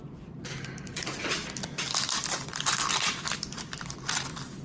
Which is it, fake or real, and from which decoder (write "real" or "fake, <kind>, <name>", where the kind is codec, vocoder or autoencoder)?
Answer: real